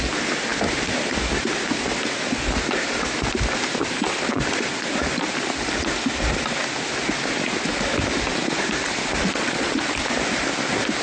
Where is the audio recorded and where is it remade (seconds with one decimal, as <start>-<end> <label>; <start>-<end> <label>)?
0.0-9.2 recorded; 9.2-9.8 remade; 9.8-11.0 recorded